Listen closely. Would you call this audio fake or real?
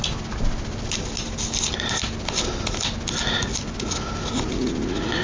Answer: real